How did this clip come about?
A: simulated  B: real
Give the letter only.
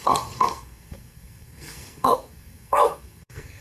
A